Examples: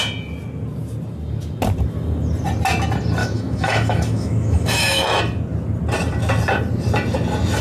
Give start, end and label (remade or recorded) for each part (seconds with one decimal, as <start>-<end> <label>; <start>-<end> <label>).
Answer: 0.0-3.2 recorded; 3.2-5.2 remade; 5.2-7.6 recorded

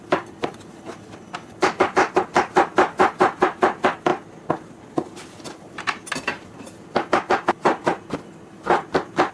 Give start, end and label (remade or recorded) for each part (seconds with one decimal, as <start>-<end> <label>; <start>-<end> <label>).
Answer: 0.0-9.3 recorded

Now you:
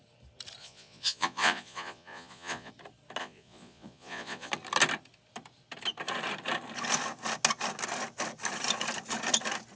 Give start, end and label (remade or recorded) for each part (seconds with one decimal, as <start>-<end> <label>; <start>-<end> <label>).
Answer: 0.0-0.6 recorded; 0.6-2.7 remade; 2.7-3.2 recorded; 3.2-4.5 remade; 4.5-9.8 recorded